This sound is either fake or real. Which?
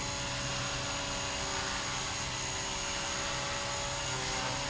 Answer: real